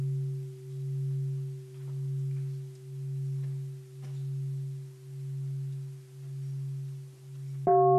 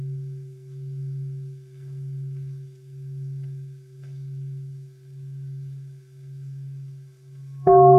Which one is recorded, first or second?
first